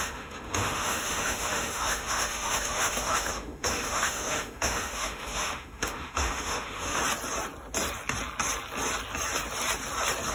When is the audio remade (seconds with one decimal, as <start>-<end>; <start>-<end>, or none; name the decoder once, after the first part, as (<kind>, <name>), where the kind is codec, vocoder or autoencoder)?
0.0-7.0 (autoencoder, DAC-VAE)